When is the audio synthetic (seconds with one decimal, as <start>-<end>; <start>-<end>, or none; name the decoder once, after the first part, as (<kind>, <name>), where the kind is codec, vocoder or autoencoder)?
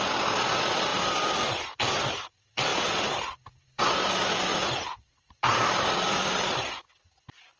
none